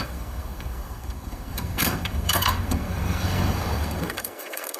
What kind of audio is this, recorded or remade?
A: remade